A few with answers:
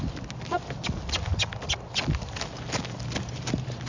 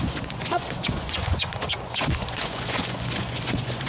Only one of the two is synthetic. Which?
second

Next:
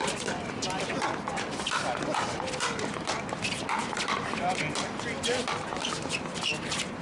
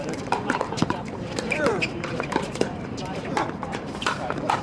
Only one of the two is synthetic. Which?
second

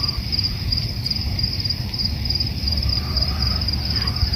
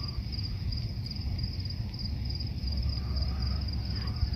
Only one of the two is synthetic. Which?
first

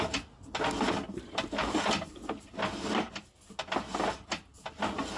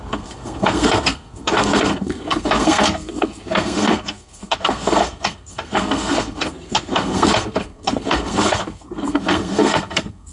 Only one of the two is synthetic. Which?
second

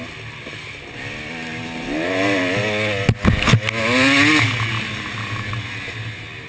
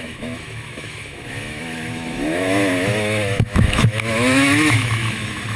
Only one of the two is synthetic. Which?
second